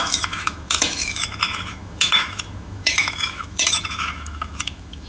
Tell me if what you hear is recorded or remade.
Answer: remade